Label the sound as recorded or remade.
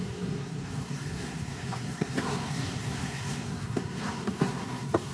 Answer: remade